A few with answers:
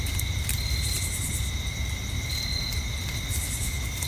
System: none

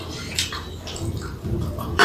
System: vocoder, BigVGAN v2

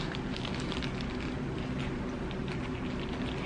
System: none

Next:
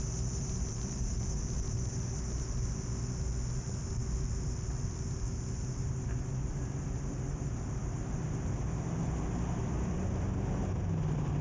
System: none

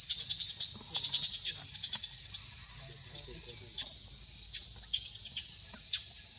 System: none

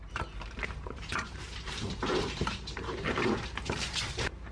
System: vocoder, BigVGAN v2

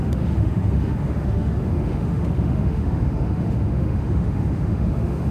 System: autoencoder, DAC-VAE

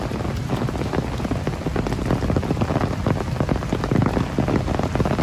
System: none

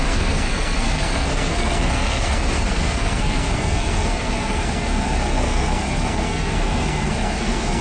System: codec, SNAC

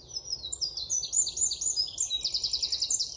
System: none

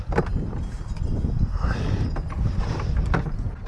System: none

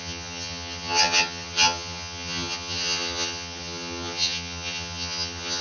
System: vocoder, HiFi-GAN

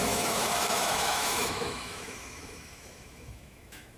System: autoencoder, DAC-VAE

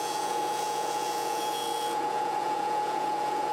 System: vocoder, Vocos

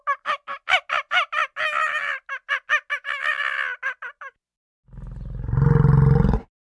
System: none